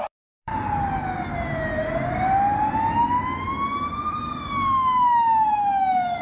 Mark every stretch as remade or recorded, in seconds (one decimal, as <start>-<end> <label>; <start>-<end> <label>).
0.0-0.5 remade; 0.5-4.2 recorded; 4.2-6.2 remade